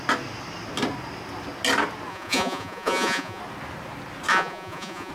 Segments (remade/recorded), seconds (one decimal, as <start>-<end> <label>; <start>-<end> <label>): 0.0-2.1 recorded; 2.1-3.4 remade; 3.4-4.3 recorded; 4.3-5.1 remade